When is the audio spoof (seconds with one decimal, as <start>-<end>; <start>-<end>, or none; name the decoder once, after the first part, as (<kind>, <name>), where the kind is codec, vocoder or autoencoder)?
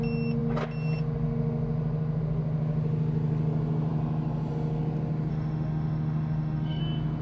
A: 5.3-6.8 (autoencoder, DAC-VAE)